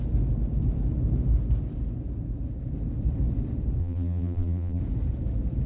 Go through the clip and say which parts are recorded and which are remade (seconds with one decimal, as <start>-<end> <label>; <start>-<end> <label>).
0.0-3.8 recorded; 3.8-4.8 remade; 4.8-5.7 recorded